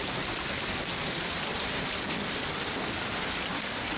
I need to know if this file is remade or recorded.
recorded